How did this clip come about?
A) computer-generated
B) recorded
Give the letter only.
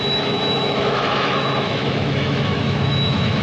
A